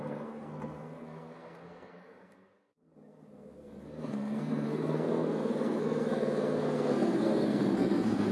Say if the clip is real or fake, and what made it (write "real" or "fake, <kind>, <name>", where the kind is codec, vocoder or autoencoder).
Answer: fake, codec, SNAC